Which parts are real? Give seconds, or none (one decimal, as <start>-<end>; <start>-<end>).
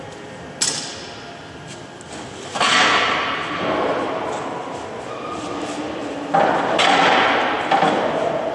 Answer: 0.0-8.5